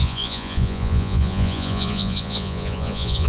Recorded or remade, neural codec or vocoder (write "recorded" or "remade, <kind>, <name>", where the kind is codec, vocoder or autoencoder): remade, vocoder, Vocos